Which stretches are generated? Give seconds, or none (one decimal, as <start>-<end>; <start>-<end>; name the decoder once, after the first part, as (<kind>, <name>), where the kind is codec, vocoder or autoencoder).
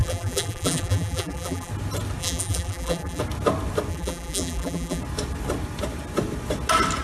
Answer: 0.0-1.7 (vocoder, BigVGAN v2); 2.2-3.2; 3.9-5.0